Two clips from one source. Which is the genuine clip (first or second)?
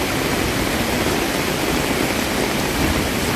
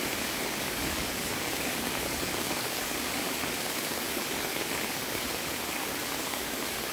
first